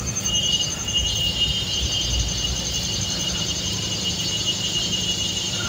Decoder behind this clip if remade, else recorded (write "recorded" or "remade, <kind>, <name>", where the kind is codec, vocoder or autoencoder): recorded